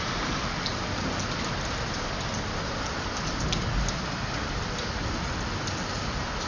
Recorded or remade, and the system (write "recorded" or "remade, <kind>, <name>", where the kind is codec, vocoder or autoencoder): recorded